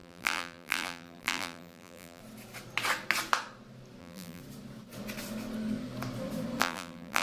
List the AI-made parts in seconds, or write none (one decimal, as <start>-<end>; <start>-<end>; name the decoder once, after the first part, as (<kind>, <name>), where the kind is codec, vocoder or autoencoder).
0.0-2.2 (vocoder, BigVGAN v2); 4.0-4.4; 6.6-7.2